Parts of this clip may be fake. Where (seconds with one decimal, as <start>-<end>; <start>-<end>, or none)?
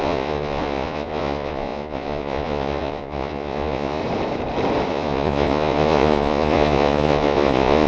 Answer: 0.0-4.0; 4.9-7.9